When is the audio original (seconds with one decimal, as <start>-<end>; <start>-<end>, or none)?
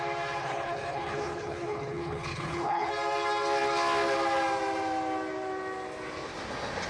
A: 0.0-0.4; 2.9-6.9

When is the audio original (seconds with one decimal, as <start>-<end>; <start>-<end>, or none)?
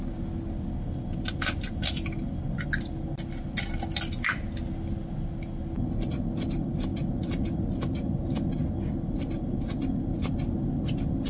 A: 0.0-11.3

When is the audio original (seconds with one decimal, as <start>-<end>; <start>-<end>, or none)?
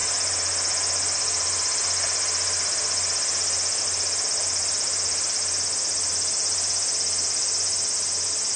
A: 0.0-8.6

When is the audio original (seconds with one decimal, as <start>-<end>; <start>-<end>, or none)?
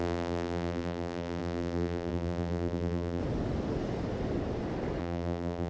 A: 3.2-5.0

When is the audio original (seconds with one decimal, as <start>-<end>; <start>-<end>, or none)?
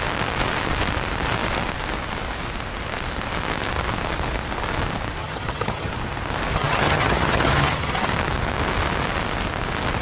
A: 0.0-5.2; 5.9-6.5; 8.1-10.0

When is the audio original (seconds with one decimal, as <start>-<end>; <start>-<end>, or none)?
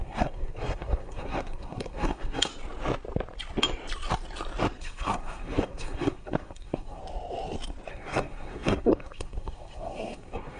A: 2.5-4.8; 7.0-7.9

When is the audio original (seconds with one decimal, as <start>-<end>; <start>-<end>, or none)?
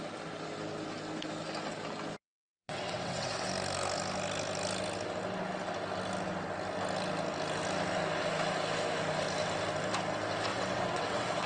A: 0.0-2.2; 3.5-10.5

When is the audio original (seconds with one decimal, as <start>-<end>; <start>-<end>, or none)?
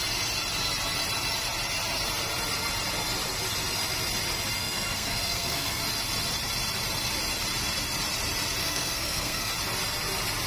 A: 0.0-4.6; 5.8-8.6; 9.5-10.5